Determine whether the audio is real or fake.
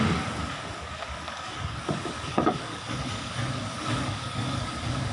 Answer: fake